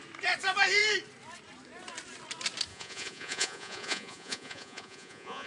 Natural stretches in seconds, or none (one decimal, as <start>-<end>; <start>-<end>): 0.0-2.7